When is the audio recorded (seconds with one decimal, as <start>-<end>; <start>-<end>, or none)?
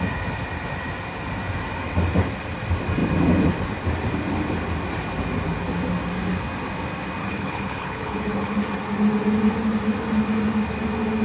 0.0-7.2; 8.5-11.2